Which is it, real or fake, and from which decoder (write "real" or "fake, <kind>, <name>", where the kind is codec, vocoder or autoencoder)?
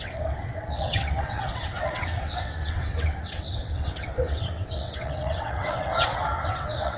fake, vocoder, WaveNeXt